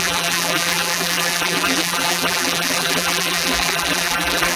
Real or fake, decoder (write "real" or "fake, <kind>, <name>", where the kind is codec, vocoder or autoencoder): fake, vocoder, BigVGAN v2